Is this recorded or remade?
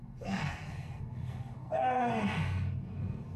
remade